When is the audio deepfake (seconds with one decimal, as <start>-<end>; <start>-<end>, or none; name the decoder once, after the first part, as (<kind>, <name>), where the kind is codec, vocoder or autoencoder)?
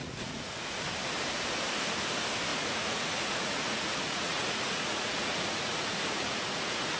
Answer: 0.0-0.8 (vocoder, Vocos); 2.5-7.0